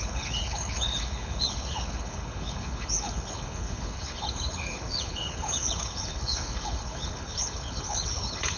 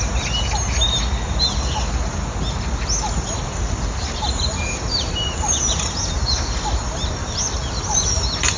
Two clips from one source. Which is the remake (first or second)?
first